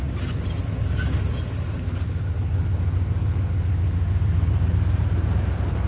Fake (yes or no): no